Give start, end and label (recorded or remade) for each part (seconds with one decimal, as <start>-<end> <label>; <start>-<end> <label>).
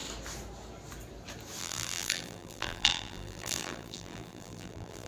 0.0-1.6 recorded; 1.6-5.1 remade